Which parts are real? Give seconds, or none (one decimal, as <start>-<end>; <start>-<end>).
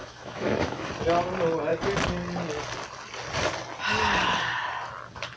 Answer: 0.9-5.4